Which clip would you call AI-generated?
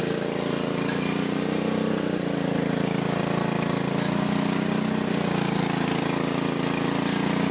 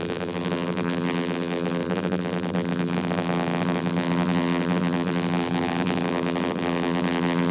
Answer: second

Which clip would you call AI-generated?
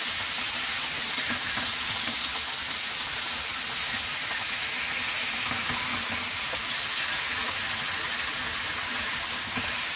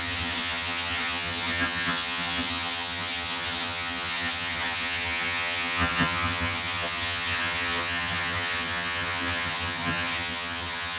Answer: second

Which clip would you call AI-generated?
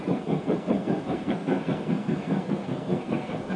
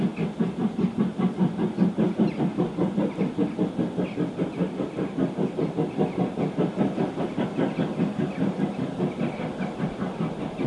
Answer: first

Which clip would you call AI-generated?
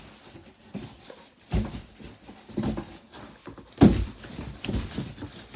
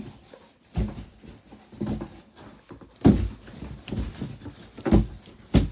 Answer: first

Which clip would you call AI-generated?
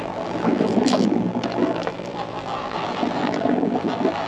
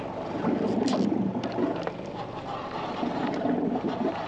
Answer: first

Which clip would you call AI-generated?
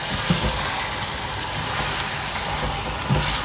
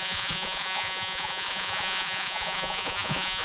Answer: second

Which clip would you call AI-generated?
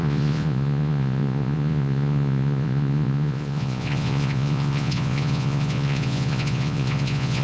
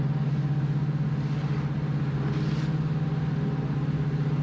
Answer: first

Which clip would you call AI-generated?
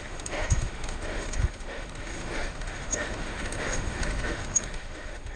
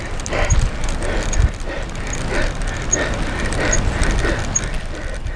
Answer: first